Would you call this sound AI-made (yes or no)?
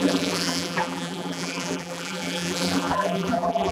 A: yes